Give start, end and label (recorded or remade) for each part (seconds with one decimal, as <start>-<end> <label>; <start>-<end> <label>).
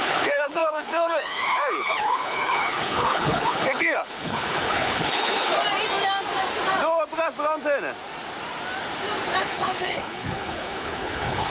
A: 0.0-5.5 remade; 5.5-9.4 recorded; 9.4-11.5 remade